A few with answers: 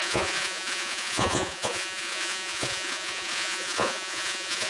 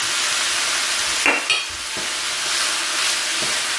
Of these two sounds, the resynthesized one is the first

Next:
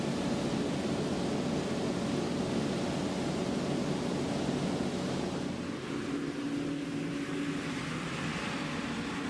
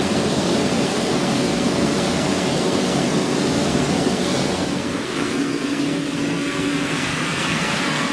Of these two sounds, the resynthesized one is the second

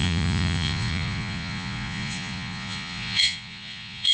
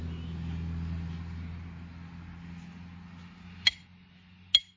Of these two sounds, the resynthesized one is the first